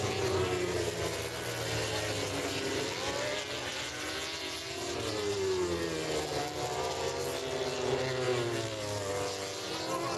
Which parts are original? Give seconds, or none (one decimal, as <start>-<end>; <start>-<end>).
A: 0.0-10.2